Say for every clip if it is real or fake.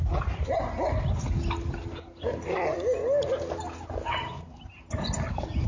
real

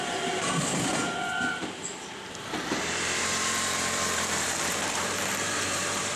fake